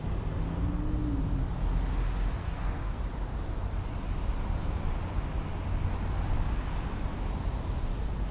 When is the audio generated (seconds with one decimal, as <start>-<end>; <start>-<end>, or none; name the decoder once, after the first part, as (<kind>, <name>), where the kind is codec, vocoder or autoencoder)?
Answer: 2.4-3.0 (codec, SNAC)